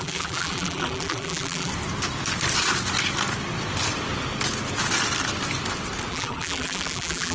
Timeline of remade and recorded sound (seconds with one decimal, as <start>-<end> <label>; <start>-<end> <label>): 0.0-1.7 remade; 1.7-6.1 recorded; 6.1-7.3 remade

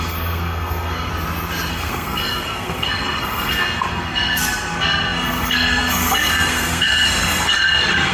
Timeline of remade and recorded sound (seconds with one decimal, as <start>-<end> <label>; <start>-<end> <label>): 0.0-1.1 remade; 1.1-1.7 recorded; 1.7-8.1 remade

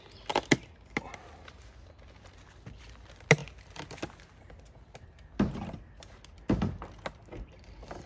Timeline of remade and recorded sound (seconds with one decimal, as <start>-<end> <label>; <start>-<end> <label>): 0.0-8.1 recorded

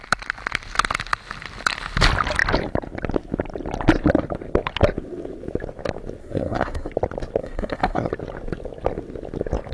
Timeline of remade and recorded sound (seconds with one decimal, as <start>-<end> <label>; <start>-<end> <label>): 0.0-6.2 recorded; 6.2-6.9 remade; 6.9-7.4 recorded; 7.4-8.1 remade; 8.1-9.7 recorded